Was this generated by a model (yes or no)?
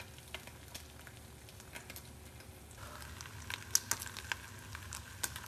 no